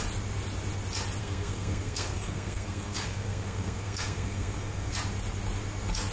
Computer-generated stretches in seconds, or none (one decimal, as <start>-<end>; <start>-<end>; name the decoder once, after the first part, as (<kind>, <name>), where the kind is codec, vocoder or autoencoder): 1.2-4.9 (codec, SNAC)